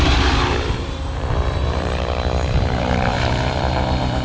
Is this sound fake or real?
fake